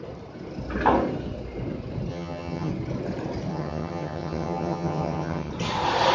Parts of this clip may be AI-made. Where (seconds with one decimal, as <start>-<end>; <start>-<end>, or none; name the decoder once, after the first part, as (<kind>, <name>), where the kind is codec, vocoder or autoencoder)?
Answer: 2.1-2.7 (vocoder, HiFi-GAN); 3.5-5.5